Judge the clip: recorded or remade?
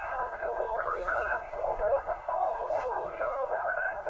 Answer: remade